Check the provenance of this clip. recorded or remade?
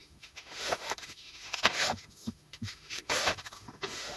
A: remade